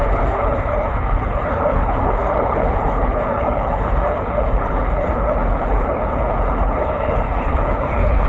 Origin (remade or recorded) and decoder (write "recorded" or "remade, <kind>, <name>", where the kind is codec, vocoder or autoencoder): remade, codec, HILCodec